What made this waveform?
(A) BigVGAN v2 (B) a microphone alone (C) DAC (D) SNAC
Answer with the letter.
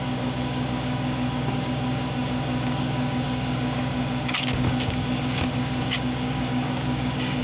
C